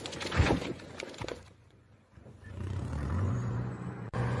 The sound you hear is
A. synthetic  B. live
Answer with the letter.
A